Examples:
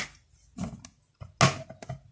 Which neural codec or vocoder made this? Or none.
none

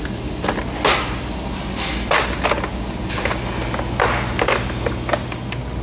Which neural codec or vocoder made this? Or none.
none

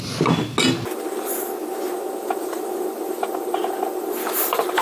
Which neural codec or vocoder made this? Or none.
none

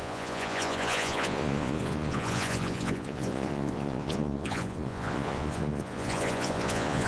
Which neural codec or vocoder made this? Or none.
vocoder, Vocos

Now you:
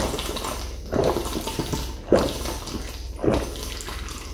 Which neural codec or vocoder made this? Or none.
none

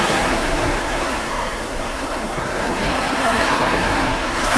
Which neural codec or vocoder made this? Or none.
codec, SNAC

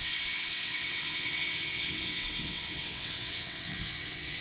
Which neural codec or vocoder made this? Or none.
vocoder, WaveNeXt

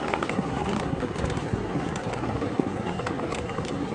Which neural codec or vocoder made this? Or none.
codec, SNAC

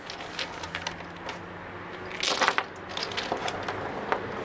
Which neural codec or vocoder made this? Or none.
none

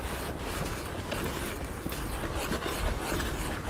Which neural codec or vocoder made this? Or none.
none